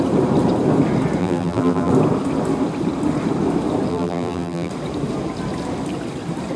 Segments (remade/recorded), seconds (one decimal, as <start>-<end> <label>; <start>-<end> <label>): 0.0-1.2 recorded; 1.2-1.9 remade; 1.9-3.9 recorded; 3.9-4.7 remade; 4.7-6.6 recorded